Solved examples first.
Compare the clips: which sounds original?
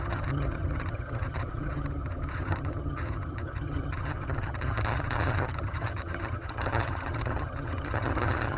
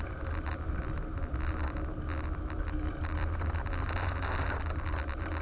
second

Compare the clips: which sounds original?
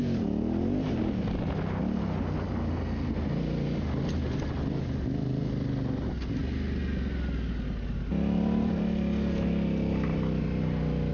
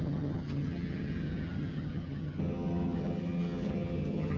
first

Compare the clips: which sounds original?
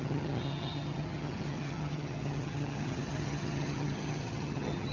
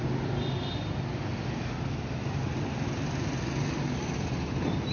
second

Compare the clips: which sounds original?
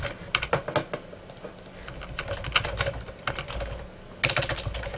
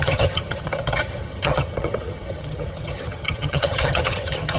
first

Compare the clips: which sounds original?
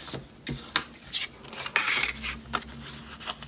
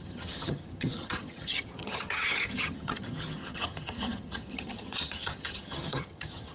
first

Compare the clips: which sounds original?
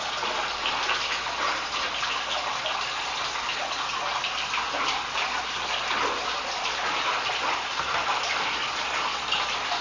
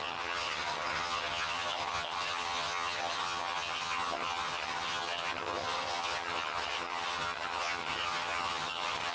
first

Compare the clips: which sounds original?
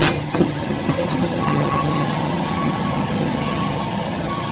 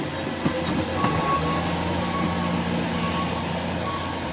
second